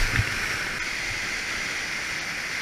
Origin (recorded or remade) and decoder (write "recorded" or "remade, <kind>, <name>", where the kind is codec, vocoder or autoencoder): recorded